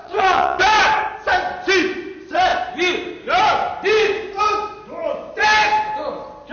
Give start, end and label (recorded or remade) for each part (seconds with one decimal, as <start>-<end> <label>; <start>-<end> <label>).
0.0-0.6 remade; 0.6-6.5 recorded